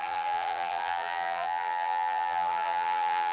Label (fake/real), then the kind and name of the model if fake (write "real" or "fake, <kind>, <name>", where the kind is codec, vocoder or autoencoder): fake, vocoder, BigVGAN v2